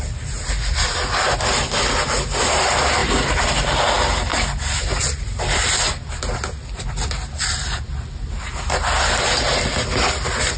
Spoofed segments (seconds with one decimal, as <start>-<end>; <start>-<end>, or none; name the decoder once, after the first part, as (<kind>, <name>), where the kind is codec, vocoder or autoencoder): none